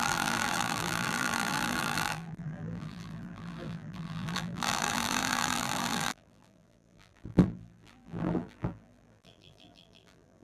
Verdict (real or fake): fake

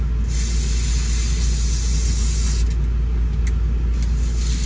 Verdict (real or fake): real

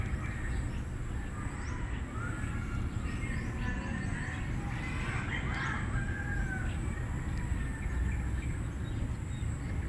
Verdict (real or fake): real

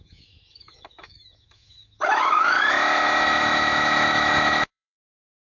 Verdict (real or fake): fake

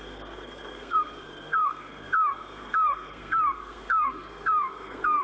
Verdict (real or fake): fake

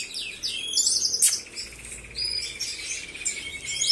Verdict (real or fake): real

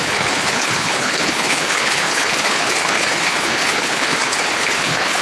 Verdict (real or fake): fake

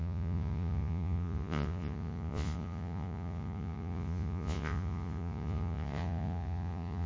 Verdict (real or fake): fake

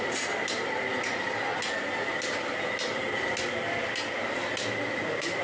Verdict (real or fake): real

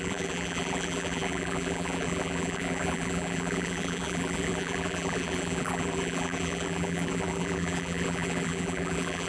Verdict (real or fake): fake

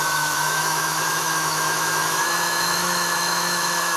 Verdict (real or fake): fake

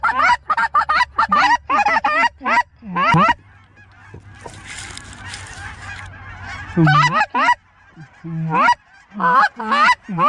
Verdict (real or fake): real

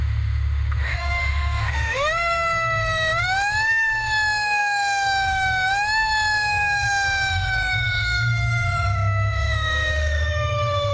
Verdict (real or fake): fake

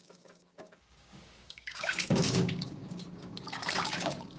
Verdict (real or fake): fake